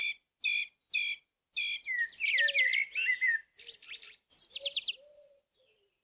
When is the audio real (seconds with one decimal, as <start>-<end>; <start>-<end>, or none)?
0.0-6.0